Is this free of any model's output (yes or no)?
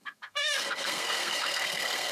no